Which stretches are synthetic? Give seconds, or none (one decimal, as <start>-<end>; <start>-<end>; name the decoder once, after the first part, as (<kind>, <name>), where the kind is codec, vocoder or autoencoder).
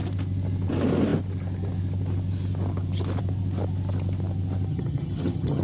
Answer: 4.7-5.6 (vocoder, HiFi-GAN)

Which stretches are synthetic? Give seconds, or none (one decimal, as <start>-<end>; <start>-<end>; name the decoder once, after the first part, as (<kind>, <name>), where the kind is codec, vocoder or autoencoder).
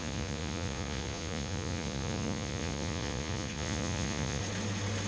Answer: 0.0-4.4 (vocoder, Vocos)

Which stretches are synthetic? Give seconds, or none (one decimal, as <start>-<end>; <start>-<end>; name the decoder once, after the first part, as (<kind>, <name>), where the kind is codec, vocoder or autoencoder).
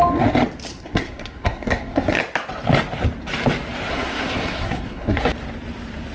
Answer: 0.7-2.2 (codec, SNAC); 3.9-5.2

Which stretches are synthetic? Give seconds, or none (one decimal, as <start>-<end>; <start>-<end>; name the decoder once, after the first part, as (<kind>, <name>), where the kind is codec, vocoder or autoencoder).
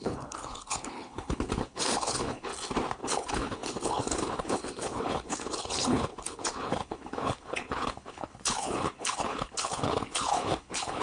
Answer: 0.0-2.5 (codec, HILCodec); 3.0-11.0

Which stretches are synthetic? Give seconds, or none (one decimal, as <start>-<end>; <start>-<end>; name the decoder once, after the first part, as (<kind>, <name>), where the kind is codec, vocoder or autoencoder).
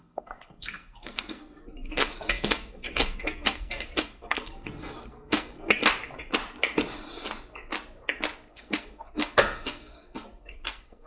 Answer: 0.0-5.8 (codec, SNAC); 8.5-11.1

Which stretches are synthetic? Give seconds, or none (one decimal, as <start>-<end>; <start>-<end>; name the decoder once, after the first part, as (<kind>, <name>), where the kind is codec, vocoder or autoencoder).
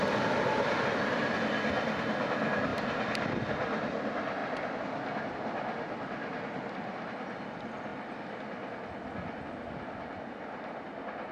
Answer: 2.7-3.4 (vocoder, BigVGAN v2); 4.4-5.2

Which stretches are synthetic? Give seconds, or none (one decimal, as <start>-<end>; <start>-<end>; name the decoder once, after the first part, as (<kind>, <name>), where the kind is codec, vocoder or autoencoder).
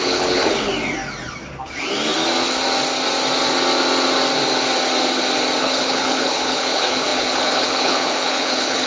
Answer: 0.0-0.7 (codec, HILCodec); 5.6-8.9